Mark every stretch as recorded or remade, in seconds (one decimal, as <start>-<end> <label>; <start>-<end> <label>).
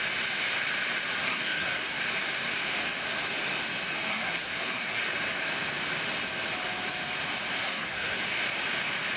0.0-1.2 recorded; 1.2-2.0 remade; 2.0-4.1 recorded; 4.1-5.1 remade; 5.1-7.6 recorded; 7.6-8.2 remade; 8.2-9.2 recorded